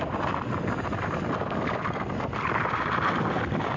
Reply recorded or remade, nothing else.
recorded